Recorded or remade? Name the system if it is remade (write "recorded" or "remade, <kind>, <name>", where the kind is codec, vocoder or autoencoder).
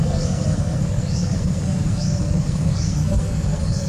remade, codec, SNAC